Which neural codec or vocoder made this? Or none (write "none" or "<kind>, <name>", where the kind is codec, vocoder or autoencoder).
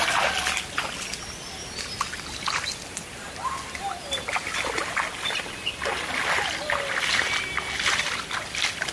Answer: none